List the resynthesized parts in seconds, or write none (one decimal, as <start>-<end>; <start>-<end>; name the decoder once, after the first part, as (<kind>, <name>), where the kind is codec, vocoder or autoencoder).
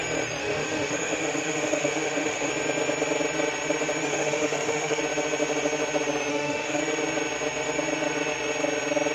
0.4-2.5 (autoencoder, DAC-VAE); 4.1-5.0; 6.3-6.8